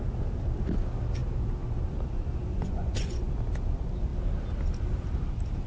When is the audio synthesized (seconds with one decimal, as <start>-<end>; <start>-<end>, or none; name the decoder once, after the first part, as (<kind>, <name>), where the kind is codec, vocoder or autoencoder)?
2.5-3.3 (vocoder, Vocos)

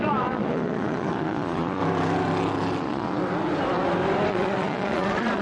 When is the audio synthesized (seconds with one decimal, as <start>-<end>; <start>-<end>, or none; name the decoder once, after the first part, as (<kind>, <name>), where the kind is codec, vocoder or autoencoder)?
0.0-1.8 (vocoder, Vocos); 2.8-3.2; 4.3-5.4

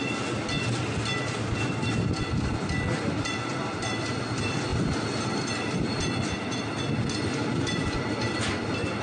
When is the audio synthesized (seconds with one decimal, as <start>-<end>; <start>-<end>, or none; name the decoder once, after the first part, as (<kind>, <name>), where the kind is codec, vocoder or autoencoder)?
none

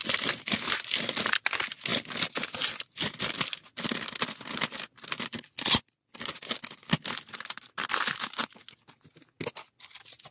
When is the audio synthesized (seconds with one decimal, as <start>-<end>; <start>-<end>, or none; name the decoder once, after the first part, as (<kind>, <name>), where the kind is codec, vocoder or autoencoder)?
none